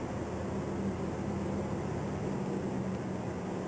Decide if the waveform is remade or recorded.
recorded